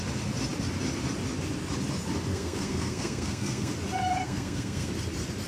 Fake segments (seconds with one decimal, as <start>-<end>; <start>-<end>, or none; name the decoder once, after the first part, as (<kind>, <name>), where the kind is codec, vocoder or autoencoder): 2.3-3.7 (codec, SNAC); 4.2-4.9

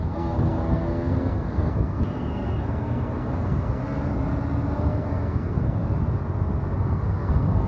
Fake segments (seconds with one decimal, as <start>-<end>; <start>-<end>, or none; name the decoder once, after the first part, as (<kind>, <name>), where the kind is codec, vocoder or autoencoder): 0.0-3.8 (codec, SNAC); 4.8-5.8; 6.8-7.7

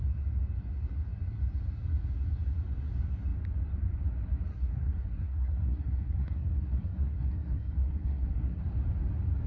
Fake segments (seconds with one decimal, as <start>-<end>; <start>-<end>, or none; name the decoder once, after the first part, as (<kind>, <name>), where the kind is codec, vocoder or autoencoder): 4.5-8.6 (codec, SNAC)

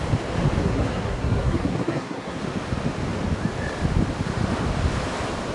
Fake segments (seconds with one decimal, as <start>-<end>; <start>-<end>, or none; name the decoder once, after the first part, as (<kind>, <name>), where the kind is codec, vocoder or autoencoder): 0.6-2.4 (codec, SNAC)